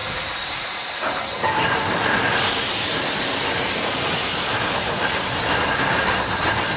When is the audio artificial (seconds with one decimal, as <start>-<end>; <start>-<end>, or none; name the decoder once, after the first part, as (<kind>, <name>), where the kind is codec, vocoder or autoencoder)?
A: 0.0-2.5 (vocoder, BigVGAN v2)